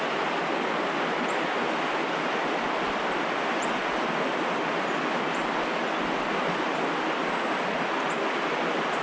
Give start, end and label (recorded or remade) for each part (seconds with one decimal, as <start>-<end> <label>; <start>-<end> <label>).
0.0-9.0 recorded